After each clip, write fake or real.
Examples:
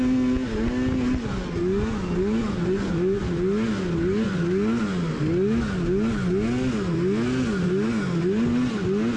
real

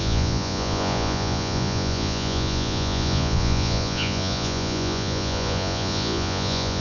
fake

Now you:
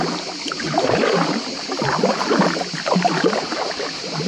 real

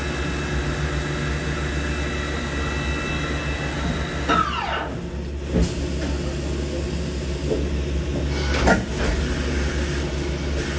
real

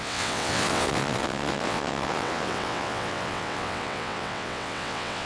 fake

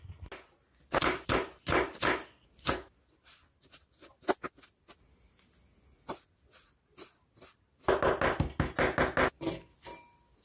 real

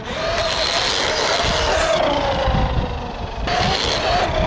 real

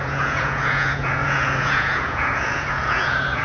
fake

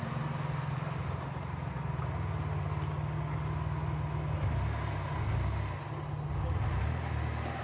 real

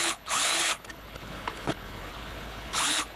fake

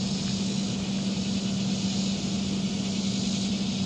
real